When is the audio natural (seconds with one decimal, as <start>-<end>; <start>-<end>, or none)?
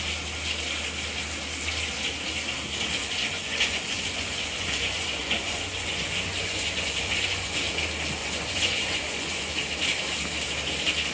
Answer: 0.0-3.0; 7.8-8.2; 9.5-11.1